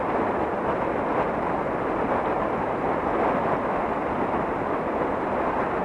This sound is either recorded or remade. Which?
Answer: recorded